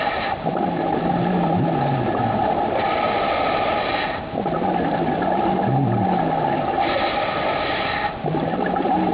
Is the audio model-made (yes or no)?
no